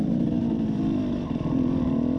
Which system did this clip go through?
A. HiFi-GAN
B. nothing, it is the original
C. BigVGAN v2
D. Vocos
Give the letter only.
B